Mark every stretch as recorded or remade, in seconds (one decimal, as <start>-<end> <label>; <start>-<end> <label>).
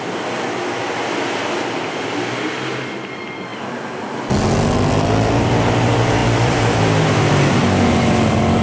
0.0-6.2 recorded; 6.2-7.3 remade; 7.3-8.6 recorded